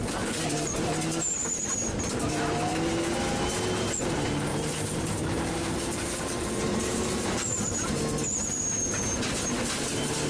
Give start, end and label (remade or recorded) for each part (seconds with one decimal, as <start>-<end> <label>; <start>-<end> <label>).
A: 0.0-4.5 recorded; 4.5-8.0 remade; 8.0-10.3 recorded